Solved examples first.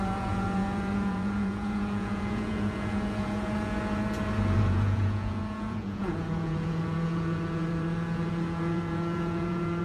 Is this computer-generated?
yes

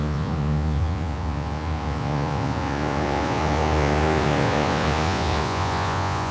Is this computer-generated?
yes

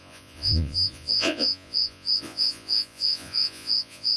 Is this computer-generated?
yes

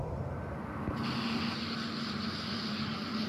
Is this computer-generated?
no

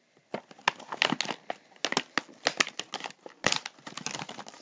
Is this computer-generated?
no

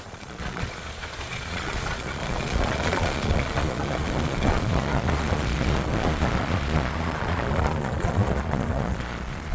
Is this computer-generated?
yes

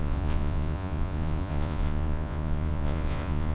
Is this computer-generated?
yes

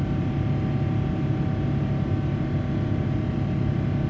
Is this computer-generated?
no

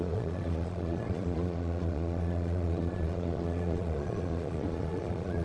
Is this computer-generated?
yes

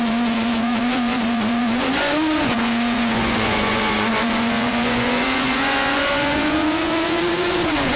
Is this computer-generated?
yes